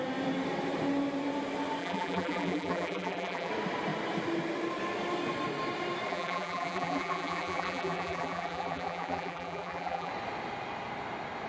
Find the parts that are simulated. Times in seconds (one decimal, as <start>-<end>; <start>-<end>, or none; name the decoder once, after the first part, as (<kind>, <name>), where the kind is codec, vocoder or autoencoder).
1.8-3.5 (vocoder, BigVGAN v2); 6.1-10.1